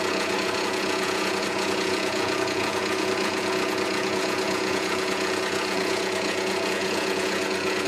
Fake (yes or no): yes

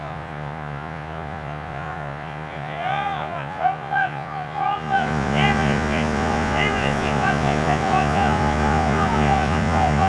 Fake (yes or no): yes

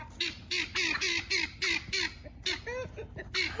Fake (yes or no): no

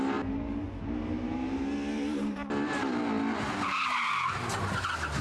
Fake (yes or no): no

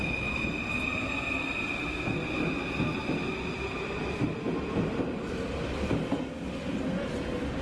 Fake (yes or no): no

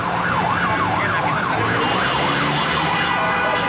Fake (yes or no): no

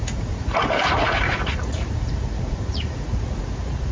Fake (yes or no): yes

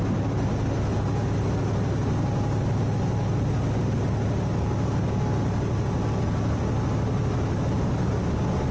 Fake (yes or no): no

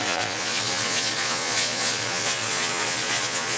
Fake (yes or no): yes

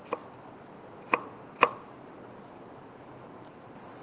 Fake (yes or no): no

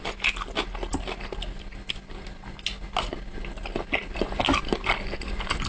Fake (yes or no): no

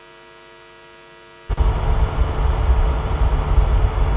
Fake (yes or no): no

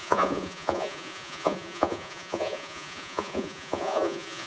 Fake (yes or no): yes